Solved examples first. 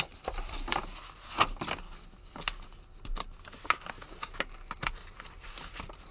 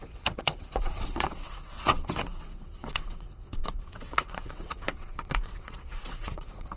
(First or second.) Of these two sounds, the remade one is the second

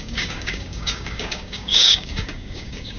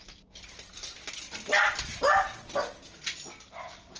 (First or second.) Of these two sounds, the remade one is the first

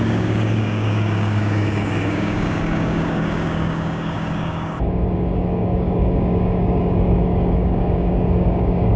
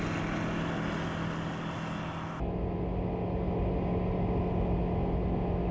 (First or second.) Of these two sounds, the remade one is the first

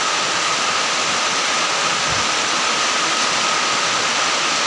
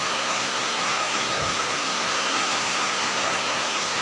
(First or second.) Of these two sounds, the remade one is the second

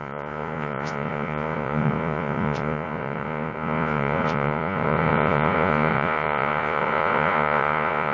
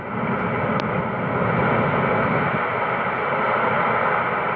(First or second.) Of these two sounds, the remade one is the first